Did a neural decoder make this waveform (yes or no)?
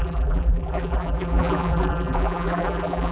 yes